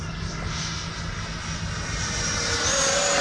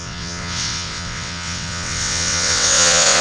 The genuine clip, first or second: first